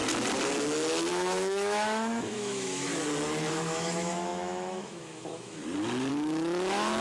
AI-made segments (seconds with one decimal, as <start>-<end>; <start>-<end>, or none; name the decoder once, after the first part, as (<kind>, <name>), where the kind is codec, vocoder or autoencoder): 1.1-2.9 (autoencoder, DAC-VAE); 3.5-5.6; 6.1-7.0